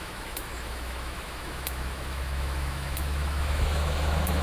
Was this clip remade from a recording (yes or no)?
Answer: yes